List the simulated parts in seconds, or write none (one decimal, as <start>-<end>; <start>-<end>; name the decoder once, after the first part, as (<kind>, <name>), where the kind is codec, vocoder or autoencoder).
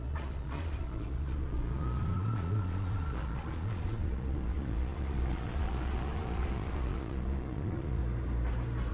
0.0-8.0 (vocoder, Vocos)